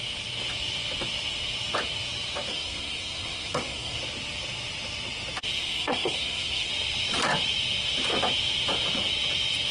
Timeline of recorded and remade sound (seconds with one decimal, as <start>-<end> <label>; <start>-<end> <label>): 0.0-2.5 recorded; 2.5-4.0 remade; 4.0-5.6 recorded; 5.6-6.7 remade; 6.7-9.7 recorded